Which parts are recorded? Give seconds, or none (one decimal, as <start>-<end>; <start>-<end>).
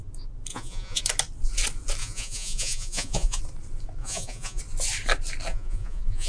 0.0-0.5; 1.0-2.0; 3.4-4.0; 4.6-5.5